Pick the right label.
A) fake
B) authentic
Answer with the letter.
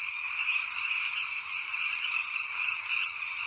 A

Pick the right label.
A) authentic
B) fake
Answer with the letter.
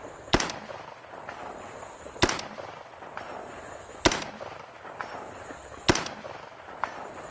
A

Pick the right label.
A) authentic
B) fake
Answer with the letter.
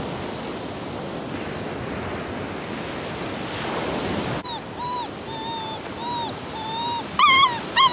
A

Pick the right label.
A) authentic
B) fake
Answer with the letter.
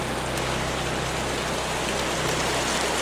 A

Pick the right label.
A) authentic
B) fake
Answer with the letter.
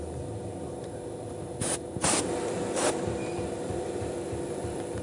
B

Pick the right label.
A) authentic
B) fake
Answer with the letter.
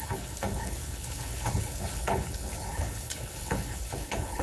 B